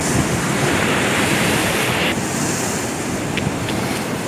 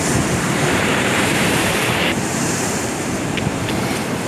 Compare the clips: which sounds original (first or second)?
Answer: first